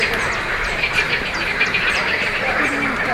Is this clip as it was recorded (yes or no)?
yes